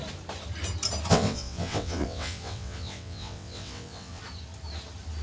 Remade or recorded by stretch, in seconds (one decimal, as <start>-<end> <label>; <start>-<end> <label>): 0.0-1.1 recorded; 1.1-4.2 remade; 4.2-5.2 recorded